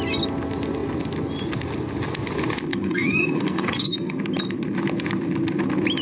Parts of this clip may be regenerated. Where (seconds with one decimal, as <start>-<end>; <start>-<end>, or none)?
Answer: 2.7-4.2